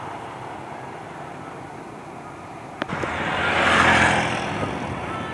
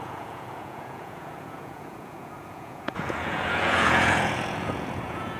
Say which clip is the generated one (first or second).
second